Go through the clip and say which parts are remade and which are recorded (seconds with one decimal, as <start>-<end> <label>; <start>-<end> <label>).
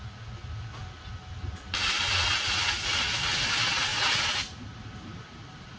0.0-3.9 recorded; 3.9-5.8 remade